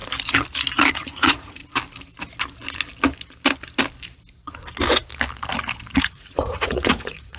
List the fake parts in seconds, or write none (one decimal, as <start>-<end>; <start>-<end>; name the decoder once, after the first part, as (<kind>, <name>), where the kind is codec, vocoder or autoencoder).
0.9-1.6 (vocoder, Vocos); 6.0-7.4